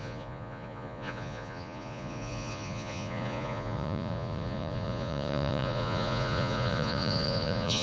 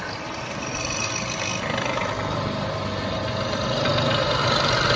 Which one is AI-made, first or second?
first